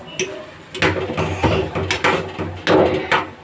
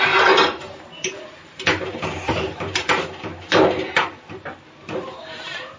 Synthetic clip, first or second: second